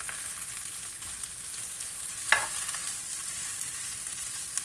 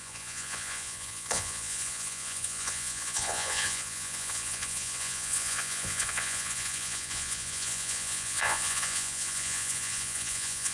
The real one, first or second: first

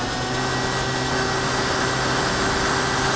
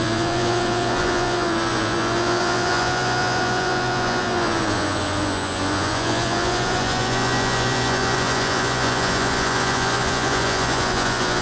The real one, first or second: first